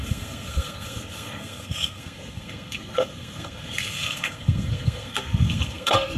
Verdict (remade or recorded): remade